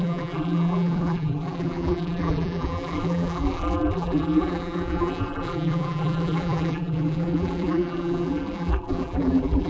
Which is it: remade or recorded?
remade